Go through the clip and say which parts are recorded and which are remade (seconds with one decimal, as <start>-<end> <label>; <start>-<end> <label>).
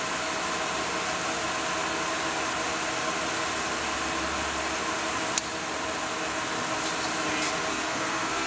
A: 0.0-7.7 recorded; 7.7-8.5 remade